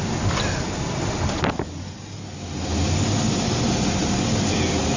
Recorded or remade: recorded